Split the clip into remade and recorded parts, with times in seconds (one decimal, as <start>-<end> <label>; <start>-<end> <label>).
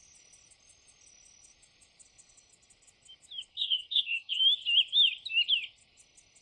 0.0-3.5 recorded; 3.5-4.4 remade; 4.4-6.4 recorded